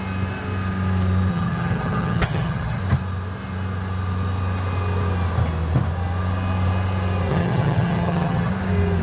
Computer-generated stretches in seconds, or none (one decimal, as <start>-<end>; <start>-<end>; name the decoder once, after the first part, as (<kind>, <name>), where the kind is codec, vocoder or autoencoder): 1.3-2.8 (vocoder, HiFi-GAN); 7.3-8.5

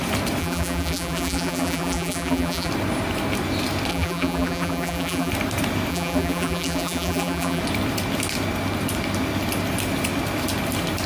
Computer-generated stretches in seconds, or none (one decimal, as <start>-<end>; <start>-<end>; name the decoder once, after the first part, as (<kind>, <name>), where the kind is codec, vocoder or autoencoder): 0.4-2.7 (vocoder, BigVGAN v2); 3.9-5.3; 5.9-7.6

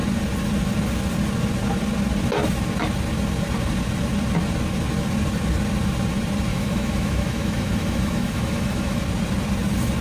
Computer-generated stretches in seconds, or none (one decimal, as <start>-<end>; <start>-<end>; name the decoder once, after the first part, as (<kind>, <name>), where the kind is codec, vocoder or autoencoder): 6.5-9.0 (autoencoder, DAC-VAE)

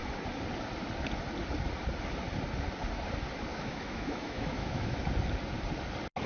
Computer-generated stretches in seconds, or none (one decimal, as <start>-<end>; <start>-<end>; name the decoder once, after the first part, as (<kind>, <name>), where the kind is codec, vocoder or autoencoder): 3.5-5.0 (autoencoder, DAC-VAE)

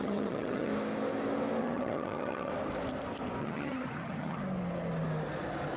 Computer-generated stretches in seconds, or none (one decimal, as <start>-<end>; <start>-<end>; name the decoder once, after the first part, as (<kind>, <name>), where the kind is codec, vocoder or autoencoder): 0.0-0.7 (vocoder, HiFi-GAN); 1.6-2.5; 3.4-4.4

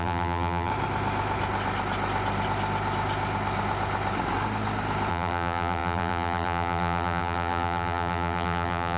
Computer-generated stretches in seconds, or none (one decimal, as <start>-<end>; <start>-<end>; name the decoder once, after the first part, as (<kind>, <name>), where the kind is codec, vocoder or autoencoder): 0.0-0.7 (vocoder, BigVGAN v2); 5.1-9.0

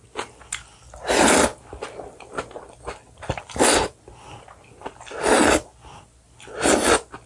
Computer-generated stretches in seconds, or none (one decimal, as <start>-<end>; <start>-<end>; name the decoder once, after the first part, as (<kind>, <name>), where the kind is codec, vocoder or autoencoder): none

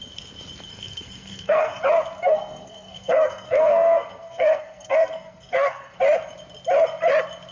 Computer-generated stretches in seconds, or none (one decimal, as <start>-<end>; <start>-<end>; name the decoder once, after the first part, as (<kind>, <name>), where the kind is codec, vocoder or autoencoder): 0.7-1.8 (codec, SNAC); 2.2-6.0